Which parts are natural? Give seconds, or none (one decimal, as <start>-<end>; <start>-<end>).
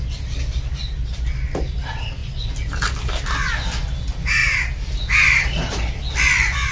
0.0-6.7